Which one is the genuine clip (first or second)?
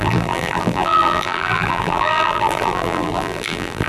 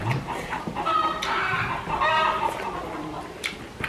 second